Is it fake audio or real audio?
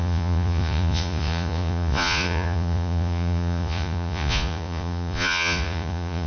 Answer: fake